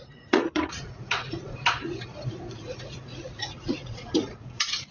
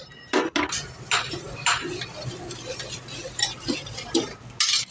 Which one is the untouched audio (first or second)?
second